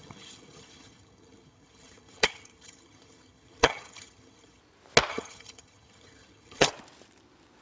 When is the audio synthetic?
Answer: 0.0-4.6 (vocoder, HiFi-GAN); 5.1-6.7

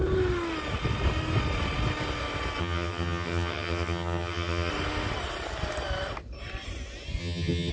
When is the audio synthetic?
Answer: 2.6-4.7 (vocoder, HiFi-GAN); 7.2-7.7

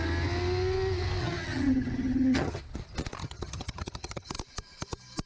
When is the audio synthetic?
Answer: 1.2-2.6 (vocoder, HiFi-GAN); 3.2-4.3

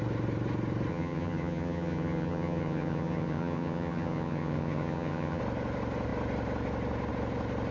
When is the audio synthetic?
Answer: 0.9-5.4 (vocoder, HiFi-GAN)

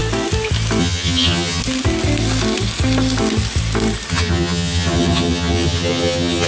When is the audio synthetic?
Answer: 0.8-1.6 (vocoder, HiFi-GAN); 4.1-6.5

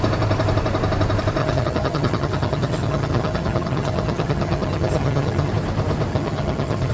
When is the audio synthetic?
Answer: 1.4-5.5 (vocoder, HiFi-GAN); 6.1-6.9

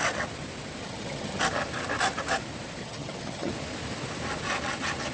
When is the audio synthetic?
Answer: 0.8-1.4 (vocoder, HiFi-GAN); 2.8-3.5